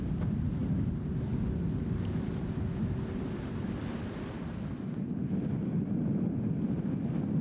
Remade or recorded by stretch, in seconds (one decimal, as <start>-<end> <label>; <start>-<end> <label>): 0.0-5.2 recorded; 5.2-7.4 remade